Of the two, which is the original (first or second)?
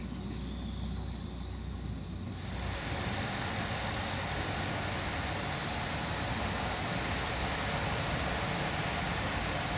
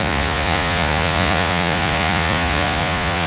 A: first